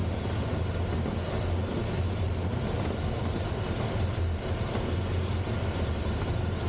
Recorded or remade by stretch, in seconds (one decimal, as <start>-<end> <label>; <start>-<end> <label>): 0.0-2.5 recorded; 2.5-4.1 remade; 4.1-6.7 recorded